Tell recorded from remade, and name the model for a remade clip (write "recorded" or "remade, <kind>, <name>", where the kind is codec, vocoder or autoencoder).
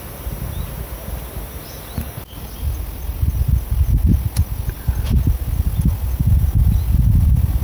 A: recorded